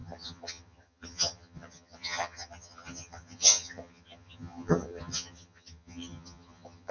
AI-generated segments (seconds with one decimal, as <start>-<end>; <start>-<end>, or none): 0.0-6.9